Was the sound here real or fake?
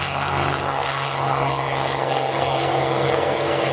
fake